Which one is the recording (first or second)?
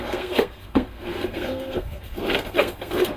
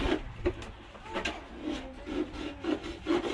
second